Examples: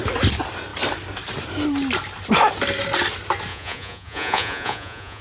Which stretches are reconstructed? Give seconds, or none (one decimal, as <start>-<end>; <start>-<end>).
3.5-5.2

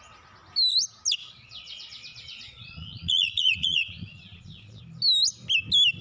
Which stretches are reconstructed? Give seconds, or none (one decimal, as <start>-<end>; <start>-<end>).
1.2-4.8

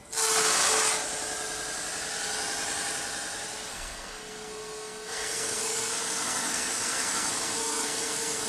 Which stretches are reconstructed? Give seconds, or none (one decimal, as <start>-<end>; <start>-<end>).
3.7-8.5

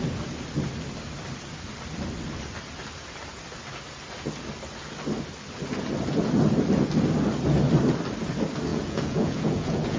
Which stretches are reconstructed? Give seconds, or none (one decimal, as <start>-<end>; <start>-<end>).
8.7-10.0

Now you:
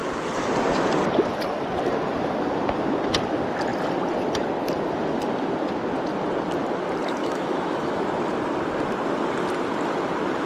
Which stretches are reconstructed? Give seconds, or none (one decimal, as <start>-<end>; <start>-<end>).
0.0-0.5; 7.2-8.0

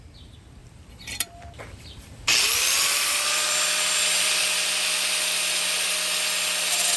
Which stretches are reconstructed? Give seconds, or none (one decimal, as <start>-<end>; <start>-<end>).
0.6-4.4